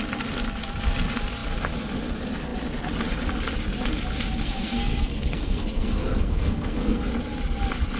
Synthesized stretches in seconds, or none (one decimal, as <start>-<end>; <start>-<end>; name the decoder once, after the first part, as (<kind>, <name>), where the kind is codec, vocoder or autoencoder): 4.4-7.1 (codec, SNAC)